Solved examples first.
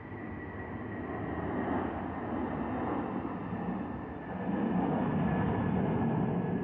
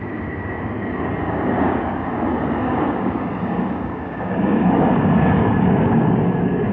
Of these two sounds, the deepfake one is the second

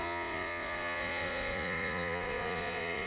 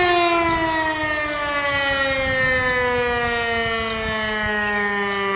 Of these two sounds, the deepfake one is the first